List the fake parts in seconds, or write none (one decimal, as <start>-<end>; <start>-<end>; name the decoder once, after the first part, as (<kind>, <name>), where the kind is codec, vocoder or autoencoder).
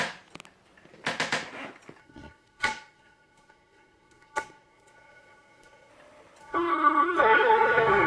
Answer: 2.0-5.9 (codec, SNAC); 6.4-8.1